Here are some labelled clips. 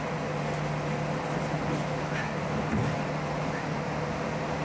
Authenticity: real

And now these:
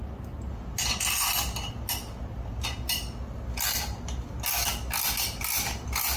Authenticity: real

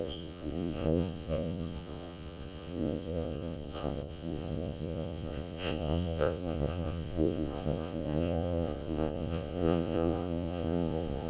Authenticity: fake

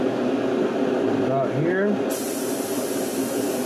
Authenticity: real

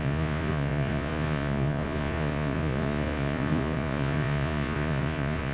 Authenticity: fake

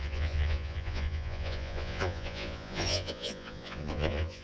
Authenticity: fake